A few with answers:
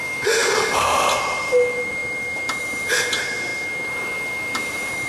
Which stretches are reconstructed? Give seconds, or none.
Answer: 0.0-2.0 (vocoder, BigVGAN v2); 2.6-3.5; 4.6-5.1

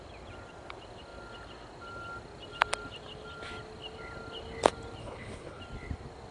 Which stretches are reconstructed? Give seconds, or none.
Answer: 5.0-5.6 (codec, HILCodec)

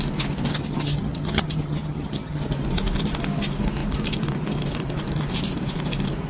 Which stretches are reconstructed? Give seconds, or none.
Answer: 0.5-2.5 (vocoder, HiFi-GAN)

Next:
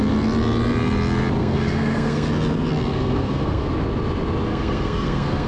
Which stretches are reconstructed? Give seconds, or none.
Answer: 1.4-2.3 (codec, SNAC); 2.9-3.7; 4.5-5.5

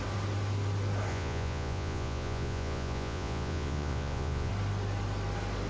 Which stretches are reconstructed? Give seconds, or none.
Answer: 1.1-4.5 (vocoder, Vocos)

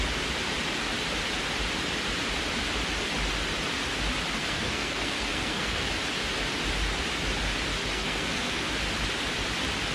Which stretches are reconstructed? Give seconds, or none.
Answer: 4.4-5.9 (codec, SNAC); 7.7-8.7

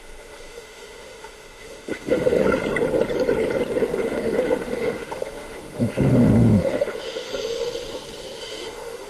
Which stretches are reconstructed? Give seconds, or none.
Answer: 0.0-2.4 (autoencoder, DAC-VAE); 3.8-7.3; 8.4-9.1